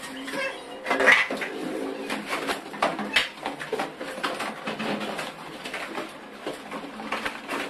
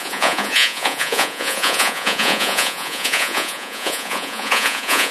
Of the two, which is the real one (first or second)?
first